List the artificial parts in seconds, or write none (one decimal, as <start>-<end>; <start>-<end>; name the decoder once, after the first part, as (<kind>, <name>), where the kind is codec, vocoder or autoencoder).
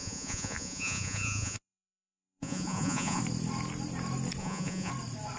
0.0-3.2 (vocoder, Vocos); 4.4-4.9